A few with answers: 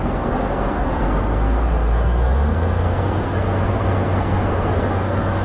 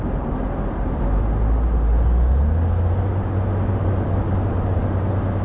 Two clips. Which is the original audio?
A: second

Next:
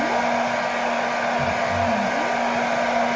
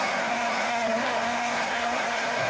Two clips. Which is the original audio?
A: first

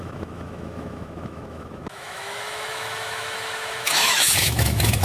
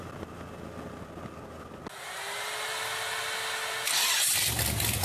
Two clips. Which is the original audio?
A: second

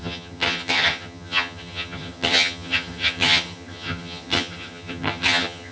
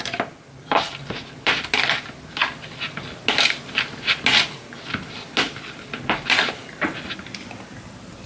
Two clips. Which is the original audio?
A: second